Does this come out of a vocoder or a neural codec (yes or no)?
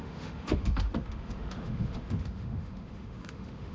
yes